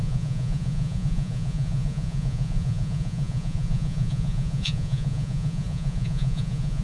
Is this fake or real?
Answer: fake